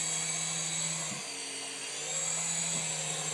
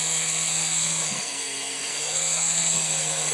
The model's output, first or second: second